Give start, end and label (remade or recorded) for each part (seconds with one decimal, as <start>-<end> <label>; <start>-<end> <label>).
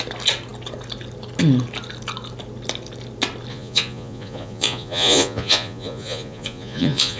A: 0.0-3.5 recorded; 3.5-7.2 remade